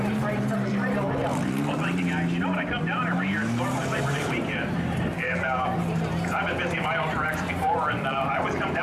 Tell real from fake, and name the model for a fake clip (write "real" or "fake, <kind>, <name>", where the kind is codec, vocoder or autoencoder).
fake, vocoder, BigVGAN v2